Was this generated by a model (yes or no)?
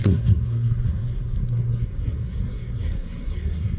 yes